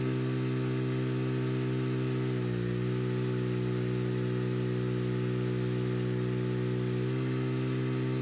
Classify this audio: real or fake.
real